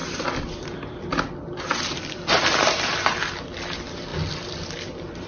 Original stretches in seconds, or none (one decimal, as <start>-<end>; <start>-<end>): 3.2-4.1

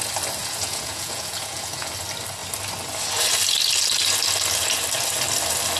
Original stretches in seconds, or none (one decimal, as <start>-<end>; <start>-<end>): 0.0-0.4; 1.9-5.8

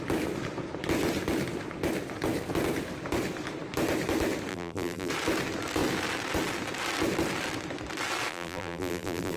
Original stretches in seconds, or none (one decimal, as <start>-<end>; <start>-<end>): 0.0-4.5; 5.1-8.3